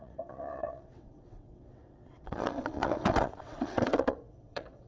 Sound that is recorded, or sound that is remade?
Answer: remade